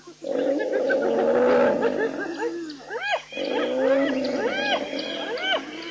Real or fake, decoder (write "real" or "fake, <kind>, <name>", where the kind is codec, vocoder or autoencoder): real